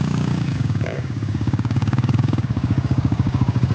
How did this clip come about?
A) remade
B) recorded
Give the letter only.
A